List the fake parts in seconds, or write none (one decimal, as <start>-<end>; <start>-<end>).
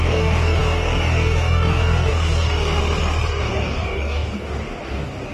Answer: 0.0-2.8; 3.4-5.3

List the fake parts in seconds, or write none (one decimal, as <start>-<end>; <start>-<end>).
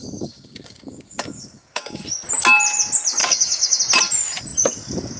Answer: 0.0-2.0; 3.2-3.8